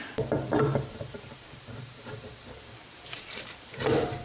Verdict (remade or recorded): remade